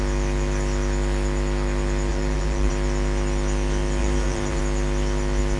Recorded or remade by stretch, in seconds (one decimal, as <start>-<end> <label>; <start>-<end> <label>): 0.0-2.1 recorded; 2.1-2.7 remade; 2.7-4.0 recorded; 4.0-4.6 remade; 4.6-5.6 recorded